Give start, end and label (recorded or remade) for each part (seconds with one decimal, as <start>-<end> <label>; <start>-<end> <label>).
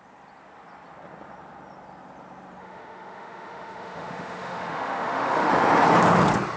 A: 0.0-2.6 recorded; 2.6-5.5 remade; 5.5-6.6 recorded